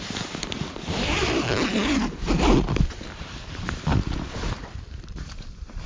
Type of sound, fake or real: fake